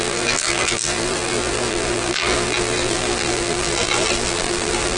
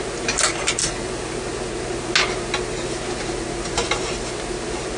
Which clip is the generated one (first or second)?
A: first